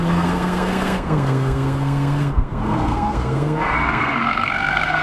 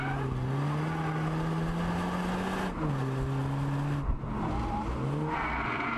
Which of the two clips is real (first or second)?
second